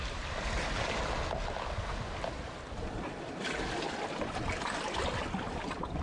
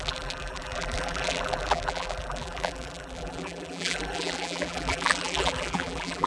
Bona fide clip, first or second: first